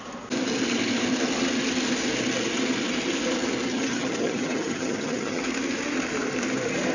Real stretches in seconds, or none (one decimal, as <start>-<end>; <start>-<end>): 0.0-3.7; 5.4-6.9